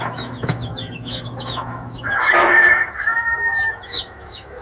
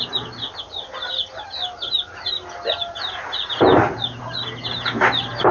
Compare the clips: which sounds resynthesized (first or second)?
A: first